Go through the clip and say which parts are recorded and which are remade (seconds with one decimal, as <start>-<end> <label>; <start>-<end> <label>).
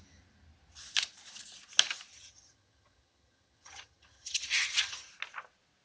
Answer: 0.0-2.1 recorded; 2.1-5.1 remade; 5.1-5.8 recorded